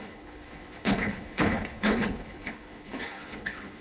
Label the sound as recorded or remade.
remade